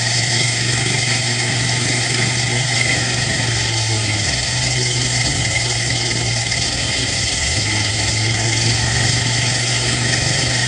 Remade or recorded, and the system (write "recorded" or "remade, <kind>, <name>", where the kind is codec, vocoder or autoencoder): remade, codec, SNAC